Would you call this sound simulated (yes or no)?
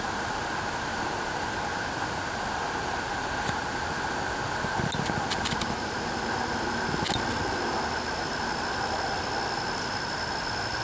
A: no